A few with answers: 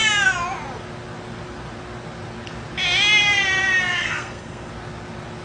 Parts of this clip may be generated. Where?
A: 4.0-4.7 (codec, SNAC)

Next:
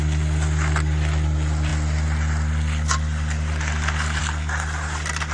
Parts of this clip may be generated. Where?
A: none

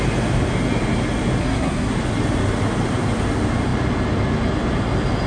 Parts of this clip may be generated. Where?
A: 1.4-1.9 (codec, SNAC)

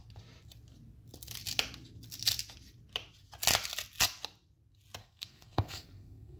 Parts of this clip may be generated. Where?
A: 5.0-6.4 (codec, SNAC)

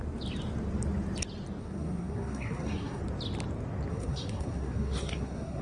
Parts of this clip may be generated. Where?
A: 1.6-3.0 (codec, SNAC); 3.9-5.6